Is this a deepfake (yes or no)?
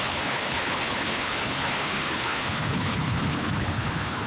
yes